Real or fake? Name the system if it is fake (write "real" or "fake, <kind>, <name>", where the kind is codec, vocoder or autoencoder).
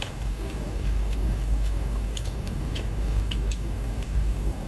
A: fake, codec, DAC